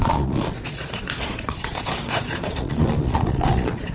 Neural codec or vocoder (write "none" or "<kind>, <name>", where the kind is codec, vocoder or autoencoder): vocoder, Vocos